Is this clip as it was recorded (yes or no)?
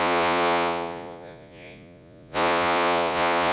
no